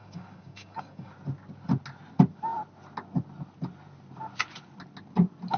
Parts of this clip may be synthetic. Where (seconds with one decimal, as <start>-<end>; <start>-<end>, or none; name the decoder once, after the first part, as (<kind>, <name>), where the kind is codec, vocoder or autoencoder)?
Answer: 0.0-1.1 (codec, DAC)